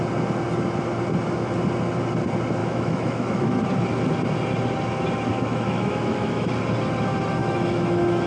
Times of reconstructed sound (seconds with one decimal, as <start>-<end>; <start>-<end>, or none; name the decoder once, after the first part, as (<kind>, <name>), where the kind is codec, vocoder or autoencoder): 2.6-3.6 (autoencoder, DAC-VAE); 5.3-6.5; 7.4-8.3